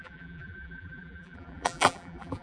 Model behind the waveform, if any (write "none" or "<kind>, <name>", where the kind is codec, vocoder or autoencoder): vocoder, BigVGAN v2